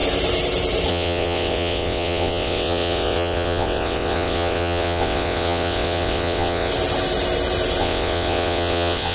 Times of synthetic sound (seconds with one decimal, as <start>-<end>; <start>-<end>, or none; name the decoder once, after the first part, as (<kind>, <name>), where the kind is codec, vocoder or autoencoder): 0.9-6.7 (vocoder, WaveNeXt); 7.8-9.1